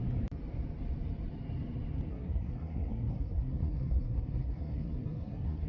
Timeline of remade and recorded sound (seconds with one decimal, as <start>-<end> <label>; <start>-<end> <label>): 0.0-2.1 recorded; 2.1-5.7 remade